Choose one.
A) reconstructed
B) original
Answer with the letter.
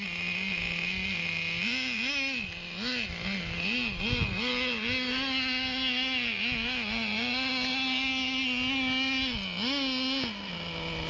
B